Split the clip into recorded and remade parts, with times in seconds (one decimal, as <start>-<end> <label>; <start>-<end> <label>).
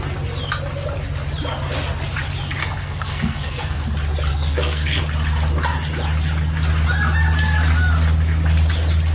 0.0-2.6 recorded; 2.6-3.8 remade; 3.8-4.3 recorded; 4.3-5.0 remade; 5.0-9.1 recorded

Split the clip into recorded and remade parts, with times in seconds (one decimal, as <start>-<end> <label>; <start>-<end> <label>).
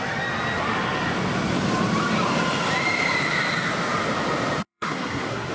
0.0-4.6 recorded; 4.6-5.5 remade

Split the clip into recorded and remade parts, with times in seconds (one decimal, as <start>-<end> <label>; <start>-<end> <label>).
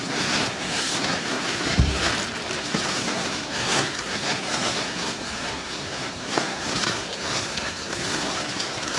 0.0-2.1 remade; 2.1-2.6 recorded; 2.6-9.0 remade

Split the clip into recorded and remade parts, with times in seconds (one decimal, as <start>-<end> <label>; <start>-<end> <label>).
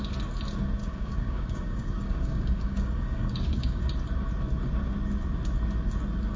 0.0-0.8 recorded; 0.8-3.8 remade; 3.8-6.4 recorded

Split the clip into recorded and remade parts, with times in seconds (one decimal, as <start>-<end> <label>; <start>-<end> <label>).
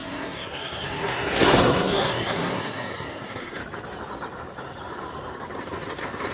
0.0-3.6 remade; 3.6-6.3 recorded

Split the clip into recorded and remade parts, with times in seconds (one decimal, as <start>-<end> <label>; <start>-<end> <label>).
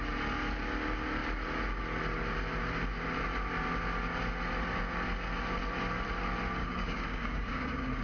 0.0-6.6 recorded; 6.6-8.0 remade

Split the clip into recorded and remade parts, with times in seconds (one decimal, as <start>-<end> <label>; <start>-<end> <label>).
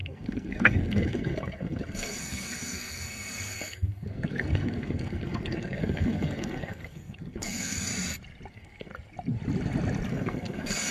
0.0-7.9 remade; 7.9-8.5 recorded; 8.5-8.9 remade; 8.9-10.1 recorded; 10.1-10.9 remade